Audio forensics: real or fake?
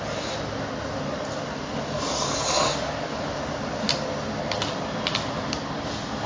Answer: real